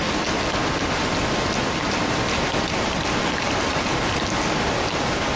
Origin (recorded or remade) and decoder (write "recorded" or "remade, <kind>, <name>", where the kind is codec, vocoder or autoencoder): recorded